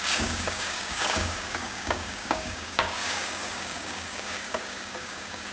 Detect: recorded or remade remade